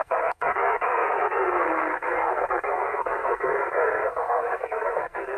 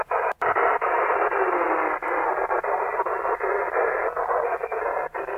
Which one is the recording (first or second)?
second